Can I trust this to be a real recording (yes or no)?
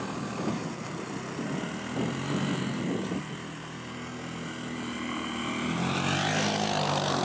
yes